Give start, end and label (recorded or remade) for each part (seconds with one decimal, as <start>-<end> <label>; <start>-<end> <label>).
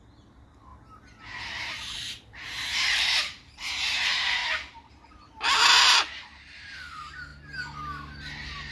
0.0-0.7 remade; 0.7-1.4 recorded; 1.4-4.4 remade; 4.4-4.9 recorded; 4.9-7.3 remade; 7.3-8.7 recorded